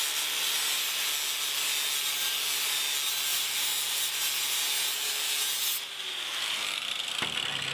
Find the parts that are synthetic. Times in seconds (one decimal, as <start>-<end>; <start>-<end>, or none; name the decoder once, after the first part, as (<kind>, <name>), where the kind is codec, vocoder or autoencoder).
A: 3.3-4.1 (vocoder, BigVGAN v2)